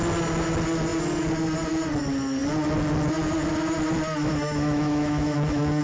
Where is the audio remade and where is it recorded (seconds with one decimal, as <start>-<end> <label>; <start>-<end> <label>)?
0.0-4.2 recorded; 4.2-5.8 remade